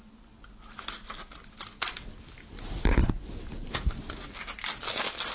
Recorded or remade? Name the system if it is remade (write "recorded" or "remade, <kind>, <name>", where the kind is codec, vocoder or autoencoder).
recorded